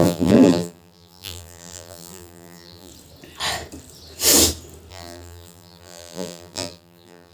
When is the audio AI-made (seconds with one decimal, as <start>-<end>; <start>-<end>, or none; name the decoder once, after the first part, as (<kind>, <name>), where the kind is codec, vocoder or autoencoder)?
0.0-2.9 (vocoder, BigVGAN v2); 4.9-7.3